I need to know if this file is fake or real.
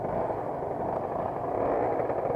real